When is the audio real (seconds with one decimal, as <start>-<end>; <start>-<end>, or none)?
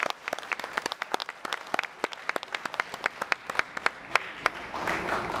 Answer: 1.2-4.4